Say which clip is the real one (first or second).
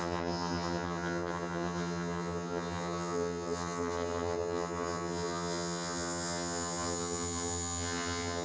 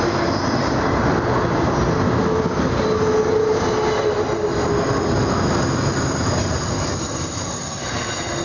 second